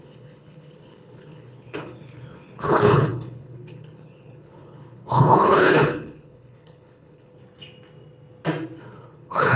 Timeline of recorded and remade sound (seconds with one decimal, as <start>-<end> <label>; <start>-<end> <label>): 0.0-7.4 remade; 7.4-8.8 recorded; 8.8-9.6 remade